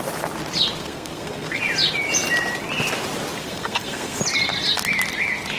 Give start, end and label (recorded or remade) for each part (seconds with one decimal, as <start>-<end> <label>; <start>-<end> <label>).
0.0-0.8 recorded; 0.8-1.6 remade; 1.6-3.4 recorded; 3.4-4.2 remade; 4.2-5.6 recorded